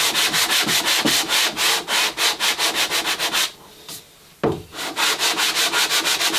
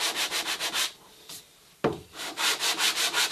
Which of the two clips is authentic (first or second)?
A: first